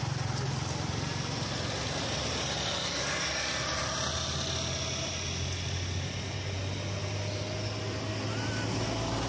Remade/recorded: recorded